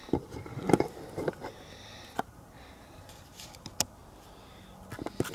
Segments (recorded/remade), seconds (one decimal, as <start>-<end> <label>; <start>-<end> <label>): 0.0-5.3 recorded